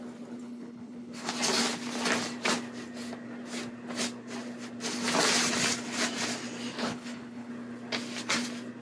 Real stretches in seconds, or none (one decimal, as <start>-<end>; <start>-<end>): 0.0-0.4; 1.3-6.8; 7.5-8.8